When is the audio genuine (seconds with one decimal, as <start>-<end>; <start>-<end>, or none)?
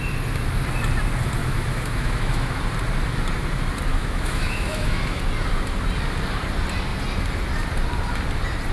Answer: 0.0-1.4; 2.6-3.9; 5.2-8.7